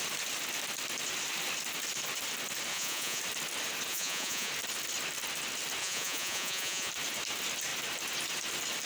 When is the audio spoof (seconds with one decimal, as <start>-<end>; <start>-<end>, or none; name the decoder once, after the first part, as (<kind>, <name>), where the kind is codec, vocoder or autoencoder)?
2.7-3.2 (vocoder, Vocos); 3.9-4.5; 5.8-6.9